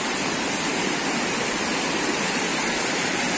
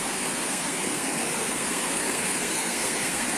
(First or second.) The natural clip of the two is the first